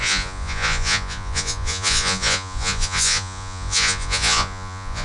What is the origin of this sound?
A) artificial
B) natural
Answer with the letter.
A